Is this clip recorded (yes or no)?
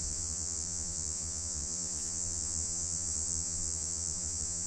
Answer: no